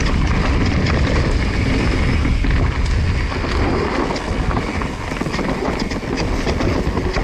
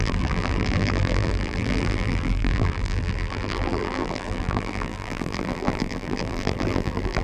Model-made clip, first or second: second